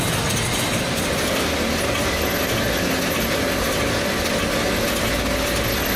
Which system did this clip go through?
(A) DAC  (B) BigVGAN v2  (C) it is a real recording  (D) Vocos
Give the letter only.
C